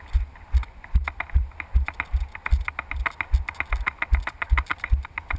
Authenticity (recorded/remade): recorded